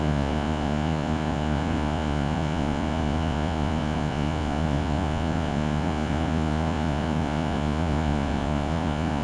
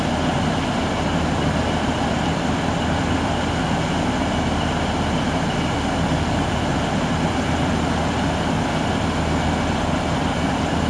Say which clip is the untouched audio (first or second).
second